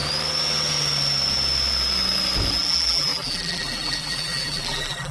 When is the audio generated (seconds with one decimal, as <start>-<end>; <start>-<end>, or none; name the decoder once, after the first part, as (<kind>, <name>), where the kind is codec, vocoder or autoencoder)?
2.5-5.1 (vocoder, BigVGAN v2)